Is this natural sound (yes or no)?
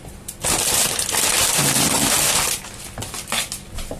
yes